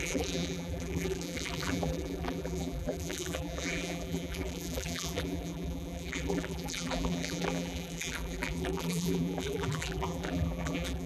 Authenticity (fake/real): fake